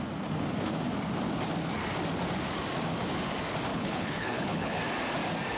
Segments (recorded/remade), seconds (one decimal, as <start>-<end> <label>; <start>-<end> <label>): 0.0-3.7 recorded; 3.7-4.8 remade; 4.8-5.6 recorded